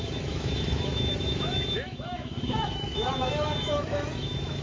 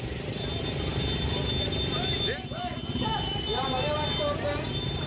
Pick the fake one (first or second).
first